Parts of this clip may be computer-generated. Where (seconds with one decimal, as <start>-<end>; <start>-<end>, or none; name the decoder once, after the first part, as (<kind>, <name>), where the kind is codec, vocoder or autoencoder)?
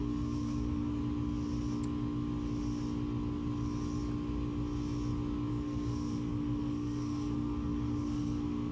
0.0-1.0 (codec, SNAC); 5.5-8.7